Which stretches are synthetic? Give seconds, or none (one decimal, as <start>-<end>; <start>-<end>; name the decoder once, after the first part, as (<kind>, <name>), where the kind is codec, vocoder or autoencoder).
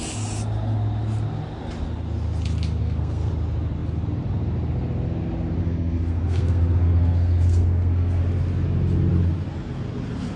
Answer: 2.8-3.3 (codec, SNAC); 5.6-8.2